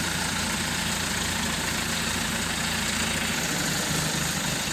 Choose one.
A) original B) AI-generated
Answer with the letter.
A